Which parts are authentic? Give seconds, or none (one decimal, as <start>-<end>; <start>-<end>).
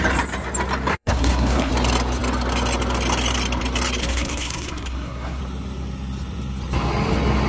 0.0-0.9; 1.7-4.0; 5.4-7.5